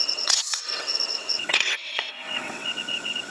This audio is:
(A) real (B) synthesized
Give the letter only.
B